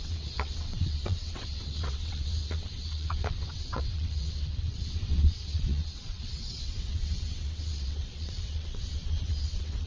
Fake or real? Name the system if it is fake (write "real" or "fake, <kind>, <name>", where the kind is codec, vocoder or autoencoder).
fake, vocoder, WaveNeXt